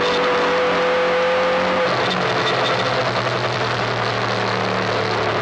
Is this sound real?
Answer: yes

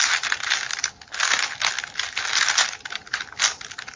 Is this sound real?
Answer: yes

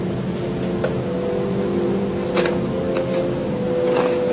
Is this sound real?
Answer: yes